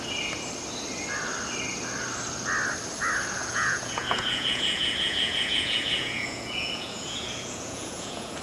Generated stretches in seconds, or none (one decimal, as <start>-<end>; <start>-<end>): 3.4-8.4